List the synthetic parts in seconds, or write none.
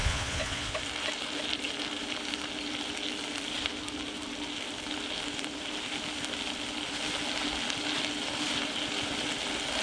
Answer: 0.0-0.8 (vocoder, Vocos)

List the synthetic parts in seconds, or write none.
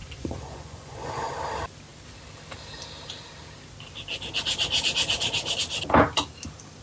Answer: 0.0-1.3 (vocoder, Vocos)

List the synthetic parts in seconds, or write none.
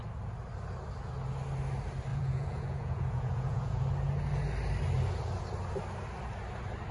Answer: 2.1-3.8 (vocoder, Vocos)